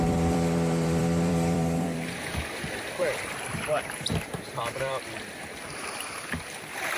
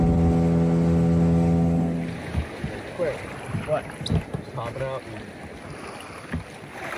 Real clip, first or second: second